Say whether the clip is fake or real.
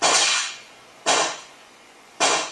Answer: fake